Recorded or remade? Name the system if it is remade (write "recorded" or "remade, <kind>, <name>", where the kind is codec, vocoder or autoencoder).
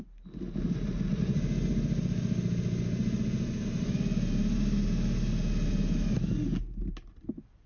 recorded